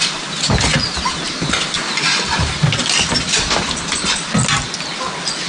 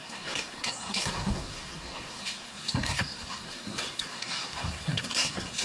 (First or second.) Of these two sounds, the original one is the first